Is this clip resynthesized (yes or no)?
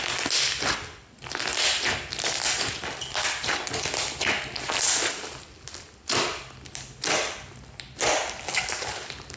no